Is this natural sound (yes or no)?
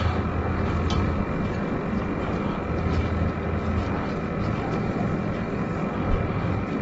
yes